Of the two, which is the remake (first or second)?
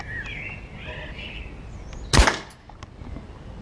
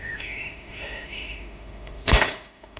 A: second